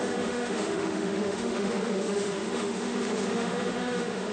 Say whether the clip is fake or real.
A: fake